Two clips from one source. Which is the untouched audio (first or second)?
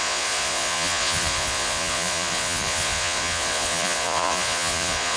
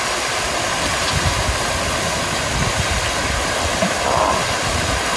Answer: second